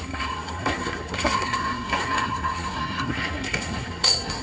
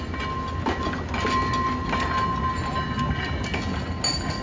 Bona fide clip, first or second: second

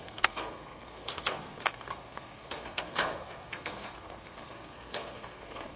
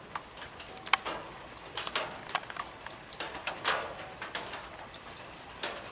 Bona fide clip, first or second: second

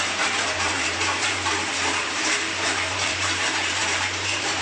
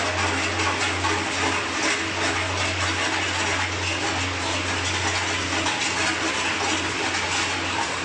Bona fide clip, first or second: second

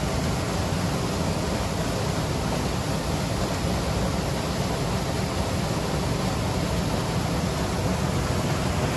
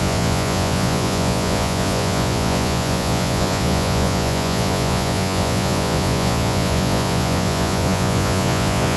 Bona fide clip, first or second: first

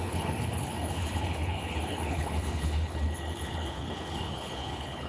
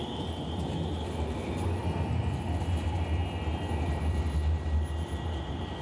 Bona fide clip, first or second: second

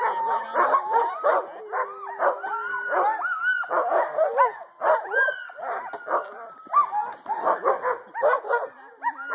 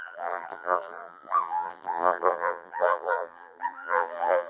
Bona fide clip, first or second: first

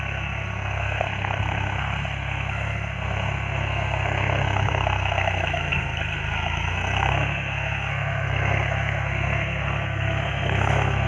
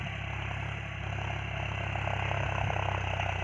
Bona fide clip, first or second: second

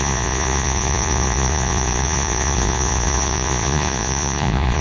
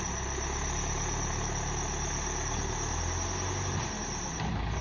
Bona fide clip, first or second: second